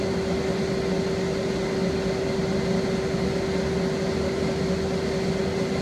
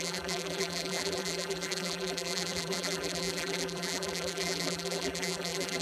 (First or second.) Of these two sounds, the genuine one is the first